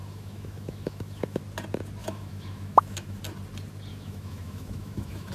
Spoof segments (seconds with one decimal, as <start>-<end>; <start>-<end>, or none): 0.0-1.4; 2.0-3.2; 3.9-5.3